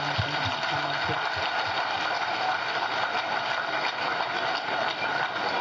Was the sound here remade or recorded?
recorded